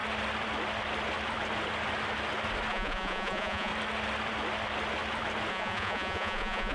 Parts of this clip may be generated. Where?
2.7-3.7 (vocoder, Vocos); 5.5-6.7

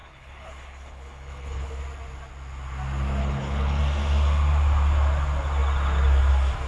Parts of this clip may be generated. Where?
0.0-1.8 (codec, HILCodec); 3.2-3.8

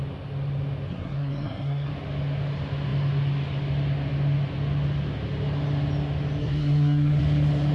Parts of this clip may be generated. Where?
0.9-1.9 (codec, SNAC); 6.4-7.2

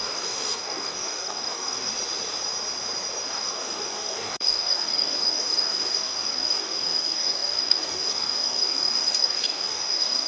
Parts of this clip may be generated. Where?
0.0-1.9 (codec, DAC); 3.3-10.3